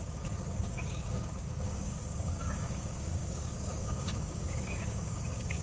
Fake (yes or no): yes